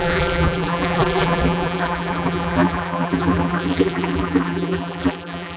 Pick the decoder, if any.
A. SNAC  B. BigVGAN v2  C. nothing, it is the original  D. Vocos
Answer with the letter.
B